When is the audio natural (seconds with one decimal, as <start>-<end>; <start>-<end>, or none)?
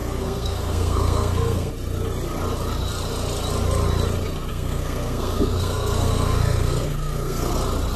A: 1.7-4.5; 7.5-8.0